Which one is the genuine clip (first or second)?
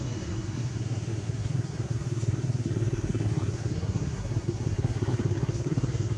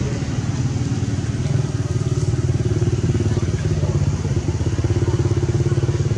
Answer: second